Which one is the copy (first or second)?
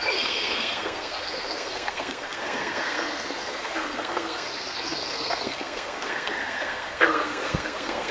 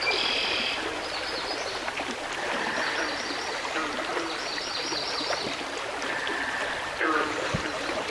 first